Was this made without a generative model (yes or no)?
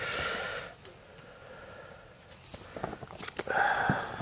yes